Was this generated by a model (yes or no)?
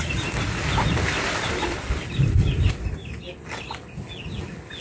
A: no